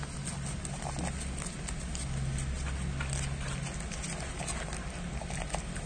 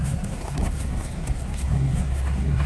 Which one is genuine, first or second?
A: first